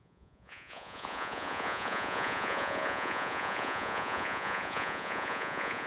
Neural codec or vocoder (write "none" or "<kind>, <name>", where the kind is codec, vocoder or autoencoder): vocoder, Vocos